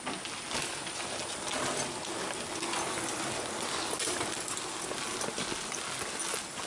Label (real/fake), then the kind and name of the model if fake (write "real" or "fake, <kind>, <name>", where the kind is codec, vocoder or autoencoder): real